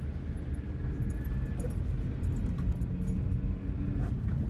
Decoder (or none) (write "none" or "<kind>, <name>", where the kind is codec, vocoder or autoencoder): none